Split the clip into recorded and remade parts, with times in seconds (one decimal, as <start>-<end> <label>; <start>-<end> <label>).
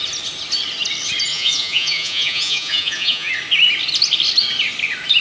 0.0-1.3 recorded; 1.3-3.3 remade; 3.3-5.2 recorded